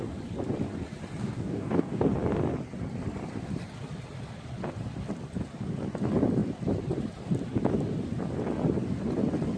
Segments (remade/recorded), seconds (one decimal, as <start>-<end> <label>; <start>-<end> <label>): 0.0-1.2 recorded; 1.2-2.0 remade; 2.0-9.6 recorded